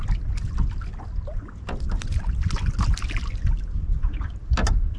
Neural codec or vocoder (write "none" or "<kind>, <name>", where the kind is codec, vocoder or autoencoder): none